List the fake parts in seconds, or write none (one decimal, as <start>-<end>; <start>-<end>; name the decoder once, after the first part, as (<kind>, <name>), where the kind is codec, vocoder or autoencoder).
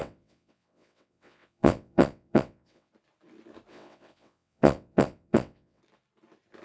0.0-2.9 (vocoder, WaveNeXt); 3.7-5.8